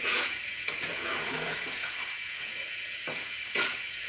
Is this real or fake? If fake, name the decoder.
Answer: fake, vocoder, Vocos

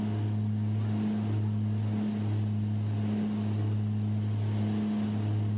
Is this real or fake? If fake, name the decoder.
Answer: real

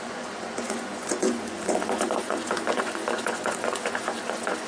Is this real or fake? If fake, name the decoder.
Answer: fake, vocoder, Vocos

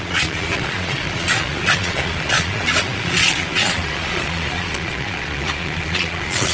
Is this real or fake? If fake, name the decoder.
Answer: fake, vocoder, Vocos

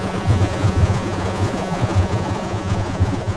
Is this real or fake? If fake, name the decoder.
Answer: fake, vocoder, Vocos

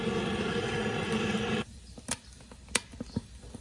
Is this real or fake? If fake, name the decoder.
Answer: real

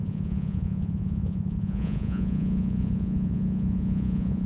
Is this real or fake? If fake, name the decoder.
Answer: fake, vocoder, Vocos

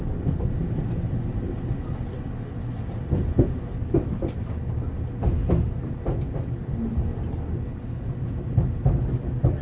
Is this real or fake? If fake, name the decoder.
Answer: real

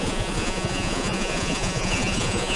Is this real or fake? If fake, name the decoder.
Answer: fake, vocoder, Vocos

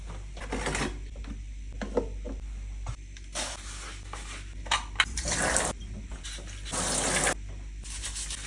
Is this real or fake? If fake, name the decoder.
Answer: real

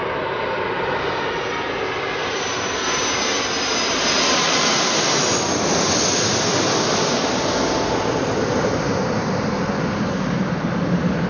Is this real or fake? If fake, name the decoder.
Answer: real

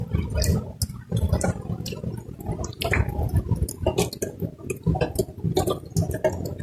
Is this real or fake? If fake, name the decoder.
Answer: real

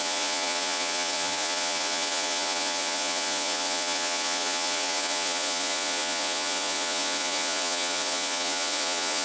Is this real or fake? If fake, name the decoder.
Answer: fake, vocoder, Vocos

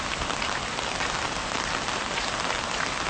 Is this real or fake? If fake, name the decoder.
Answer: real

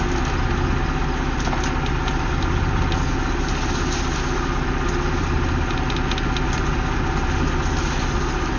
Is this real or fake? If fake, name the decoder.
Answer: real